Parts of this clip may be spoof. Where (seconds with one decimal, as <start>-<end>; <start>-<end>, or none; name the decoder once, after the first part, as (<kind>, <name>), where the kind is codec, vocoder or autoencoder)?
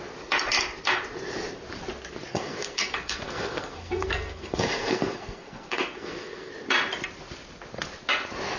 2.3-6.5 (codec, SNAC)